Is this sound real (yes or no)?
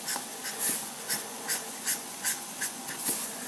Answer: no